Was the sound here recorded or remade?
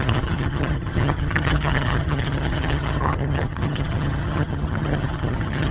remade